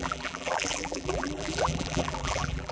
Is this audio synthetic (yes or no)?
yes